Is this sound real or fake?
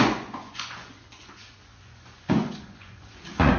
fake